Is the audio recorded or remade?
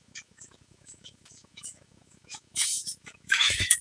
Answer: remade